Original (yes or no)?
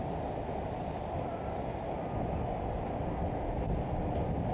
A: yes